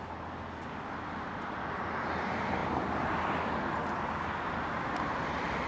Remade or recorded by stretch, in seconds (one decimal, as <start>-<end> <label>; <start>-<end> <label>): 0.0-5.7 recorded